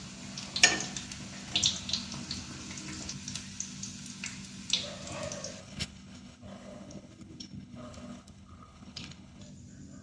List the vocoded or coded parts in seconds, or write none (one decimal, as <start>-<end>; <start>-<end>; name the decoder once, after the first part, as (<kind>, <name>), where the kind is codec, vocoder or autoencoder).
5.6-9.4 (codec, HILCodec)